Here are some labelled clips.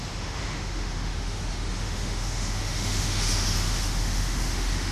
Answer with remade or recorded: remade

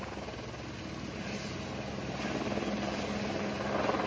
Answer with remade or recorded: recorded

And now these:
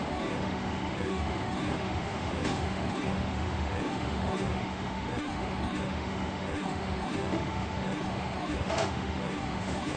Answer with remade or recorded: remade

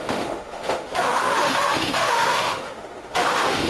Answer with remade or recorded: remade